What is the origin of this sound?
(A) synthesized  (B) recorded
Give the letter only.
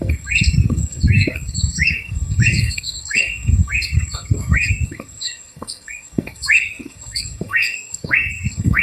A